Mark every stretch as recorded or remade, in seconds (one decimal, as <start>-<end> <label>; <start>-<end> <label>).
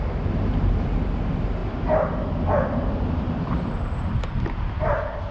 0.0-1.6 recorded; 1.6-4.8 remade; 4.8-5.3 recorded